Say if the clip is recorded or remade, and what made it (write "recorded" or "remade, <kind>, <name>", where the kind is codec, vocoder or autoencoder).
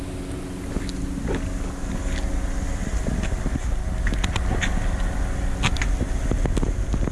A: recorded